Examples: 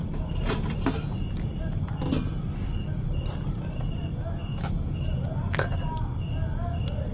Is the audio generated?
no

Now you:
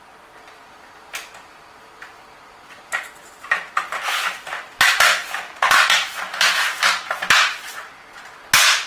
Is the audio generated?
no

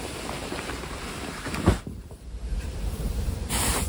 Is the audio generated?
yes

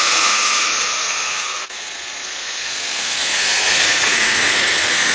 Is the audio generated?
yes